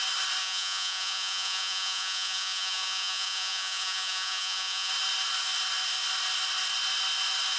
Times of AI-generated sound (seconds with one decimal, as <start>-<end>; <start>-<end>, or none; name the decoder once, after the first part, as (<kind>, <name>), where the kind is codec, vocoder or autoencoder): 0.4-4.9 (vocoder, Vocos)